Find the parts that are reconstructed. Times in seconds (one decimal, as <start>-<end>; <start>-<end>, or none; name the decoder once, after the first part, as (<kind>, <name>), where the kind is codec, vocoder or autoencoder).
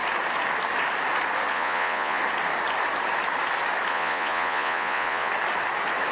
1.5-2.2 (vocoder, Vocos); 3.9-5.3